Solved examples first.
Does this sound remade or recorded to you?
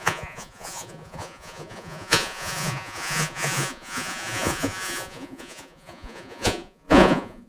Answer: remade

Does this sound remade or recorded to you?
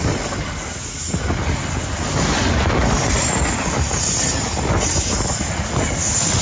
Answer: recorded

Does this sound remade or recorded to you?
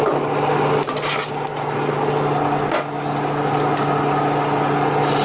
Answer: recorded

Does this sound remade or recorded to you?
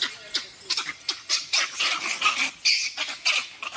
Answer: recorded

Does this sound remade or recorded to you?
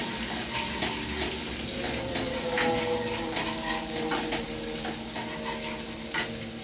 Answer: recorded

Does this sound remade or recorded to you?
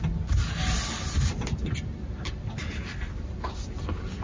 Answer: recorded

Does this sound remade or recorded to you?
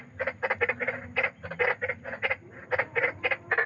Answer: recorded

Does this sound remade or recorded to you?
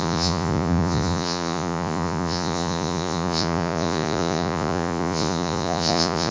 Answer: remade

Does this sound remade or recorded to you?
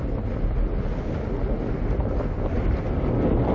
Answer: recorded